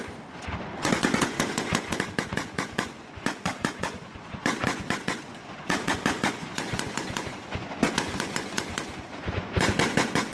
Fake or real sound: fake